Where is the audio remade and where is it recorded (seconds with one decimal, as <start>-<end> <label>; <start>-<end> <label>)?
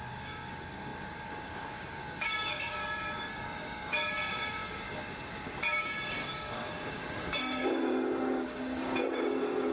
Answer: 0.0-9.7 remade